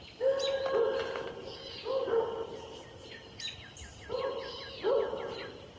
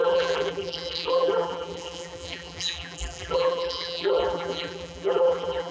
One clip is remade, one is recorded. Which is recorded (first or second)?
first